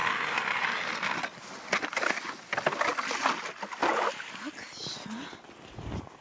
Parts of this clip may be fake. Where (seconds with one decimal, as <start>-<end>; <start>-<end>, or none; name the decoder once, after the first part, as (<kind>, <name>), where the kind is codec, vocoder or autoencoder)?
none